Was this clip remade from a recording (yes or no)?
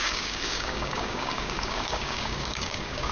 yes